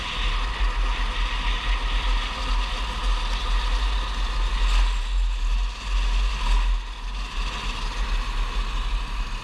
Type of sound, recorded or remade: recorded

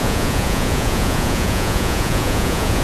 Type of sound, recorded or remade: remade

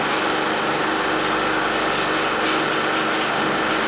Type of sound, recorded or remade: recorded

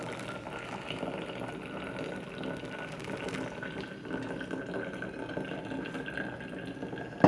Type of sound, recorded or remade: recorded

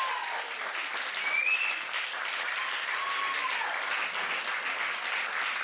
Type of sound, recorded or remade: recorded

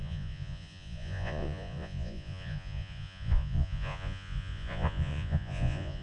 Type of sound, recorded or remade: remade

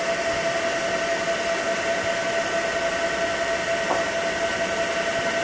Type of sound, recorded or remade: recorded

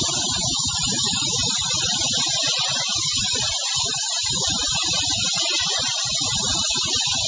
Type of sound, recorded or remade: recorded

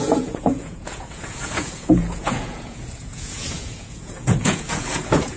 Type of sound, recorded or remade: remade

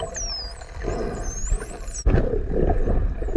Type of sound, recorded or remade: recorded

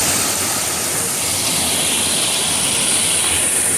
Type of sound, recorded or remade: recorded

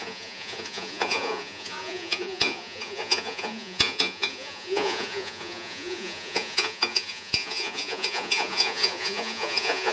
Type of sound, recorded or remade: remade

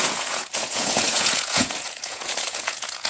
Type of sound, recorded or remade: remade